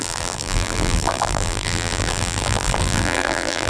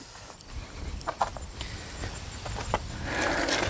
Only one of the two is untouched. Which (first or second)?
second